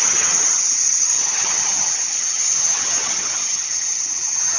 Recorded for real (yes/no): no